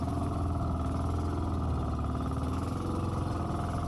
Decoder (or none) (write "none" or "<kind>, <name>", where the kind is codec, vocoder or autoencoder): none